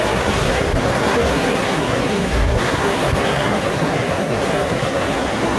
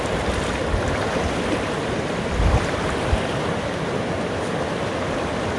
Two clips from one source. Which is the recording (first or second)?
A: second